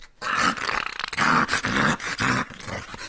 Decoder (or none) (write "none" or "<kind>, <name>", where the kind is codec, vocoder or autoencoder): none